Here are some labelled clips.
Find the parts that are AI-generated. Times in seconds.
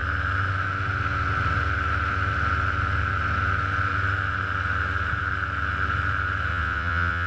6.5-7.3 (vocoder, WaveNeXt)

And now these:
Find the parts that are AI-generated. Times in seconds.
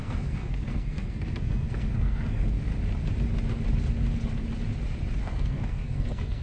0.0-2.7 (codec, SNAC); 5.2-6.4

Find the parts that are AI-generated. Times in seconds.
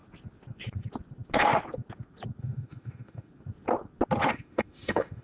2.4-3.3 (autoencoder, DAC-VAE); 4.3-5.2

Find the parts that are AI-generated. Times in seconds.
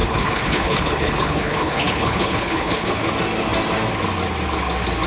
0.0-3.1 (codec, HILCodec)